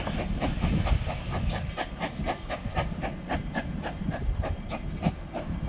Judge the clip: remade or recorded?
remade